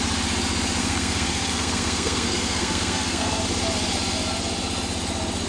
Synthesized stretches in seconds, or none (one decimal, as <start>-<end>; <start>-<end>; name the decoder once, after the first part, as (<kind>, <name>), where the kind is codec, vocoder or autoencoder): 0.8-3.4 (codec, SNAC)